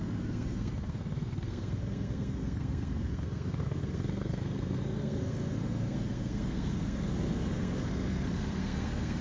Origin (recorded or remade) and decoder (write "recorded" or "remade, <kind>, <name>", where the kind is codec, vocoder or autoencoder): remade, codec, SNAC